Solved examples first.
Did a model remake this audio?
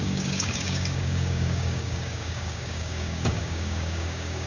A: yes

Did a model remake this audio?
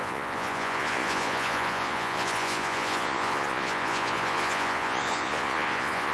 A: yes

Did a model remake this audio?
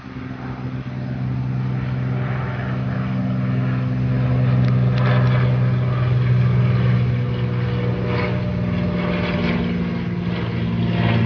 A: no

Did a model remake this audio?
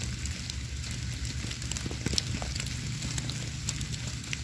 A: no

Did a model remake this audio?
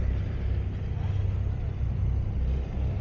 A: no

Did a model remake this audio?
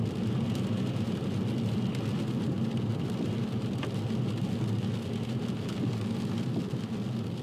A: no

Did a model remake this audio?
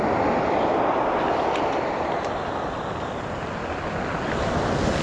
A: no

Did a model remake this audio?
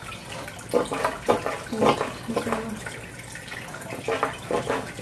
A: no